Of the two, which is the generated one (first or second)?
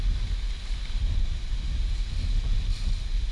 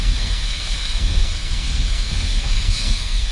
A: second